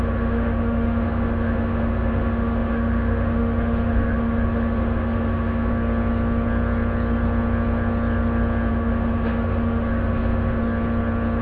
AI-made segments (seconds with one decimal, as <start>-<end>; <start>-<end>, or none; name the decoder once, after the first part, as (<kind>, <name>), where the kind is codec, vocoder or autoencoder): 0.0-5.7 (autoencoder, DAC-VAE); 8.7-10.6